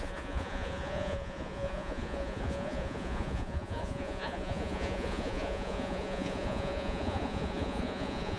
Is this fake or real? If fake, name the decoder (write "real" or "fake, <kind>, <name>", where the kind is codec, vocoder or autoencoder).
fake, vocoder, Vocos